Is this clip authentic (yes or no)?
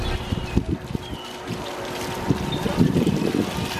yes